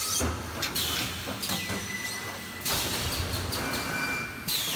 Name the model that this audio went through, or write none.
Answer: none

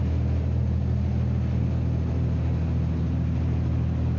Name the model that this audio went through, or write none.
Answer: none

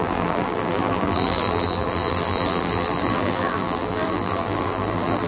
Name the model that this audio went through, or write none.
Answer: vocoder, BigVGAN v2